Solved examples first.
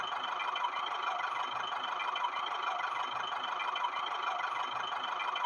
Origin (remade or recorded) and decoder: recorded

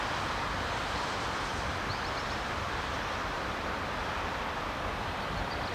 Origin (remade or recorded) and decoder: remade, vocoder, BigVGAN v2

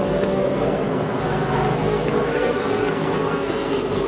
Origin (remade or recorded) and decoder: remade, codec, SNAC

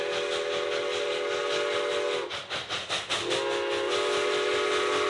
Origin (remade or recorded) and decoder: recorded